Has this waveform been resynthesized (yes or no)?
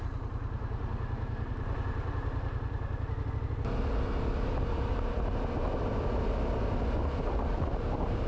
no